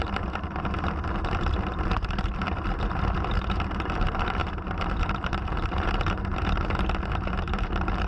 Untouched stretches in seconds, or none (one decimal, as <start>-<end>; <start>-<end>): none